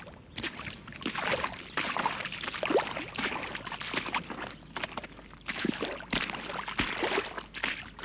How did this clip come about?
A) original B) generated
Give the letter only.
A